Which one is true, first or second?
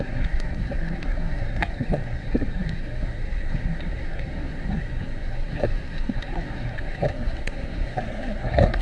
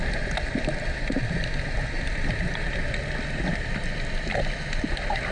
second